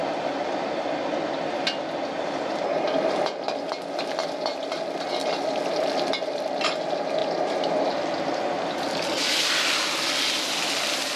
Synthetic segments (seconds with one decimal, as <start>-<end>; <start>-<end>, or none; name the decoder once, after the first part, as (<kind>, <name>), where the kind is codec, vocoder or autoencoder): none